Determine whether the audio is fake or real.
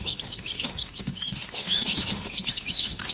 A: fake